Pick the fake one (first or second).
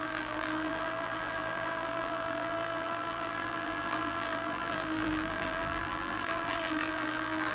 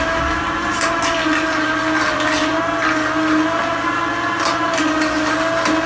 first